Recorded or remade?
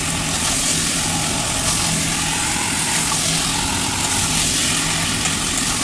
recorded